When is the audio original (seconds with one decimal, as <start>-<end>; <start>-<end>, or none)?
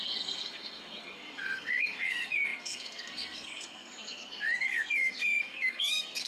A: none